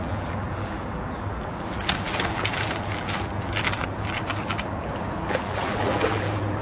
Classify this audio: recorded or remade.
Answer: remade